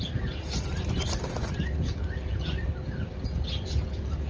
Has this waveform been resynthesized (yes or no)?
no